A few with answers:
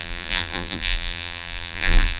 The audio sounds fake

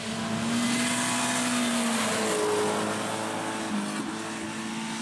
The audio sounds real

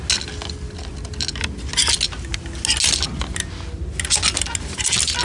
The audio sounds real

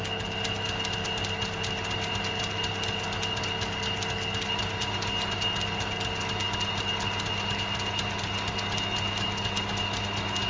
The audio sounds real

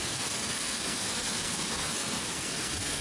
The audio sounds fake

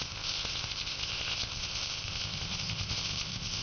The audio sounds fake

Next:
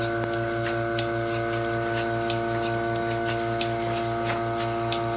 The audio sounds real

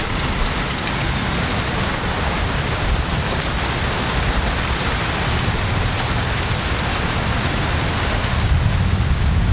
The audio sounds real